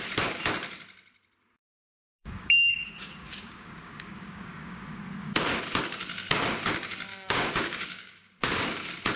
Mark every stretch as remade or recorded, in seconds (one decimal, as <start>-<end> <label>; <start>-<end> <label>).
0.0-1.6 recorded; 1.6-4.8 remade; 4.8-7.1 recorded; 7.1-8.3 remade; 8.3-9.2 recorded